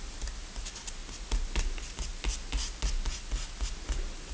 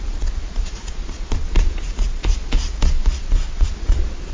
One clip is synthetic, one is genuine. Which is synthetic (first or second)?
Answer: second